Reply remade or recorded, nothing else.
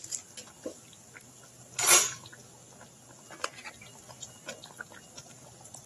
recorded